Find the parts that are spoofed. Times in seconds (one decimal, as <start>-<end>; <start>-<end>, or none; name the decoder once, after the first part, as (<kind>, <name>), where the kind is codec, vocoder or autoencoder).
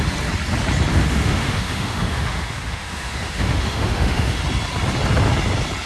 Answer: 0.9-4.4 (autoencoder, DAC-VAE)